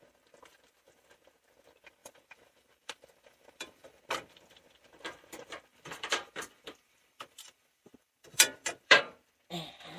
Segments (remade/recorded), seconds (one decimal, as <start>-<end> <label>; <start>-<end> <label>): 0.0-2.0 recorded; 2.0-4.0 remade; 4.0-5.7 recorded; 5.7-9.0 remade; 9.0-10.0 recorded